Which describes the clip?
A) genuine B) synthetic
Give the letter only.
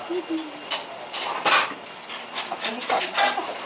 A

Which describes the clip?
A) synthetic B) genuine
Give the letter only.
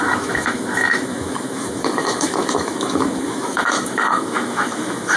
A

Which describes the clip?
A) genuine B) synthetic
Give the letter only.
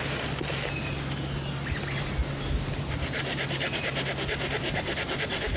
A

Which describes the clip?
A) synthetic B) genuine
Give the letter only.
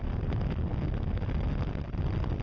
B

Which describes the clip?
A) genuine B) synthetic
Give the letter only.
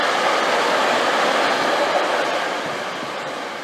A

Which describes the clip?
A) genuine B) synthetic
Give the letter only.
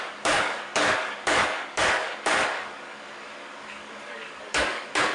B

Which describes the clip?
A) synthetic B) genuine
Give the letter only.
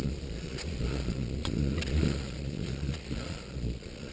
A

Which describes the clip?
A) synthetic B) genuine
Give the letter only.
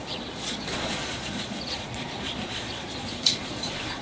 A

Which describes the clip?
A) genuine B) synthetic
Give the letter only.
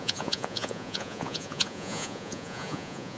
B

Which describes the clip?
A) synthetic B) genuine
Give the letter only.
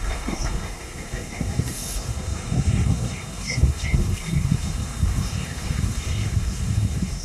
A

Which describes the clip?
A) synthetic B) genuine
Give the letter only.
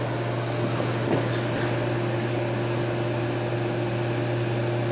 B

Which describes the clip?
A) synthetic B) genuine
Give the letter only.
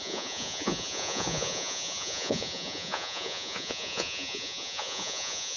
A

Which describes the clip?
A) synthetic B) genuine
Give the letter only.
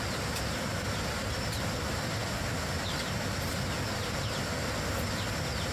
B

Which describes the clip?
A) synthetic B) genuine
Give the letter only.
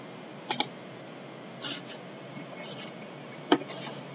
B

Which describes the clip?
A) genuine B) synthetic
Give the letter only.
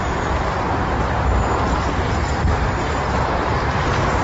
B